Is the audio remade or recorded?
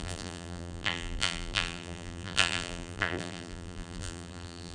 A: remade